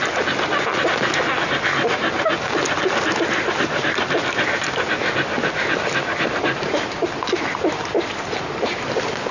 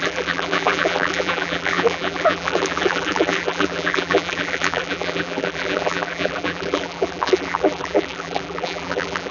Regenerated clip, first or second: second